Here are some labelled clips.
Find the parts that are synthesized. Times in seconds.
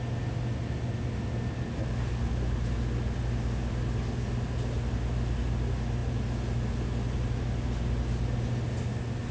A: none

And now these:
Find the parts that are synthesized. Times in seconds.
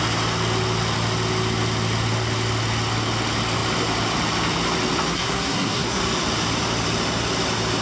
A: 5.1-6.0 (codec, SNAC)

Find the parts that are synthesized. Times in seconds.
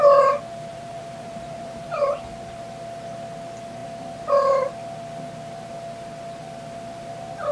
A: 0.7-1.9 (vocoder, BigVGAN v2)